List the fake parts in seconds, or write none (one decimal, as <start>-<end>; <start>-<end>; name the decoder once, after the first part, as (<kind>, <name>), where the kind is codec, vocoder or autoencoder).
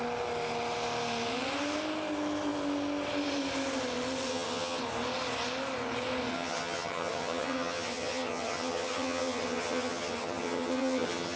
4.3-4.8 (vocoder, HiFi-GAN); 6.3-11.4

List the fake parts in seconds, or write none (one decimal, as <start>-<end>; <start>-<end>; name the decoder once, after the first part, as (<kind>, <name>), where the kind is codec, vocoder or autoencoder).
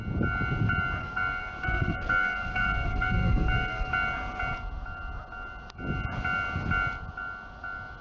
1.0-3.9 (codec, SNAC)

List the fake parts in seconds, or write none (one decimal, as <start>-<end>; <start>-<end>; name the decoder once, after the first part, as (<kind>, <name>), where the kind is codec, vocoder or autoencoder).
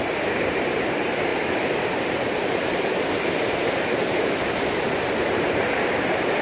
0.0-6.4 (vocoder, BigVGAN v2)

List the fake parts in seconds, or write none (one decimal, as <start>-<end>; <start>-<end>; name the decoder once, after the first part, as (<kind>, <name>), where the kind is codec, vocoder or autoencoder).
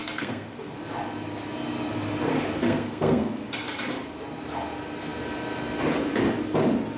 0.0-0.7 (codec, SNAC); 2.3-3.5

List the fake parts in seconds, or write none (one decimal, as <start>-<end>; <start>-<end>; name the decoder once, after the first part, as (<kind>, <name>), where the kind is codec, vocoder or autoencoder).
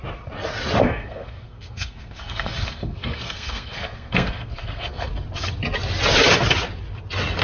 0.8-5.1 (codec, SNAC)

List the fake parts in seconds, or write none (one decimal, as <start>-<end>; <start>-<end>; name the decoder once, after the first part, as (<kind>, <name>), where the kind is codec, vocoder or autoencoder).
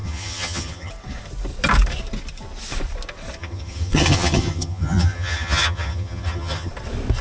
0.0-0.9 (vocoder, HiFi-GAN); 3.4-6.7